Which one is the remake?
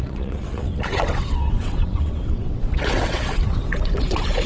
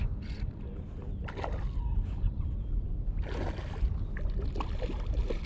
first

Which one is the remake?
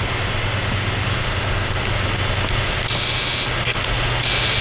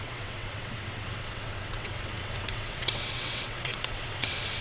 second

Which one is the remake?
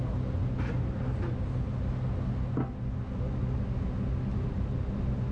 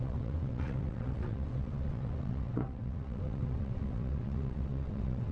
second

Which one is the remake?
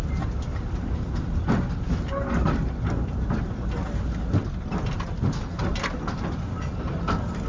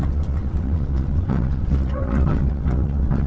second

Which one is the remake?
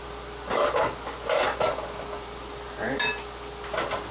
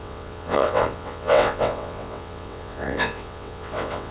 second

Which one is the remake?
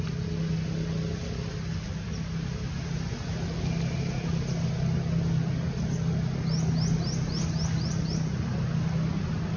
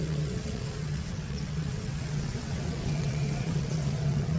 second